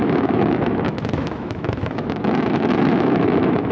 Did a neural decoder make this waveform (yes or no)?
yes